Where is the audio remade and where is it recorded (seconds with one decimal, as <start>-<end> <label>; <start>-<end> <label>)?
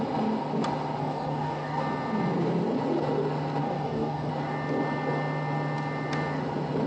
0.0-1.0 recorded; 1.0-1.8 remade; 1.8-3.6 recorded; 3.6-4.3 remade; 4.3-6.9 recorded